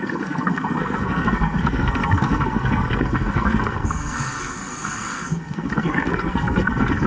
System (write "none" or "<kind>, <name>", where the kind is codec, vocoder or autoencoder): codec, SNAC